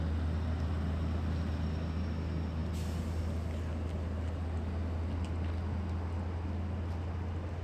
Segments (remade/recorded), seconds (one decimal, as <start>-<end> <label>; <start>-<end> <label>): 0.0-7.6 recorded